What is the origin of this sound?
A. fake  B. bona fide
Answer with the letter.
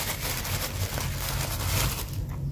B